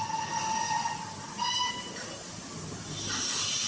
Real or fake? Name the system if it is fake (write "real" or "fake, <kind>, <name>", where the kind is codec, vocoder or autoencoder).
real